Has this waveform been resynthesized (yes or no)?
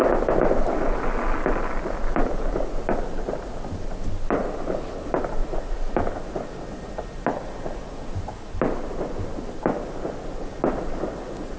no